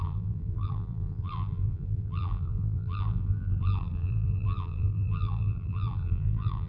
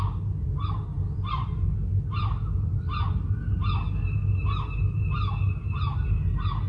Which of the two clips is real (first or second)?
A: second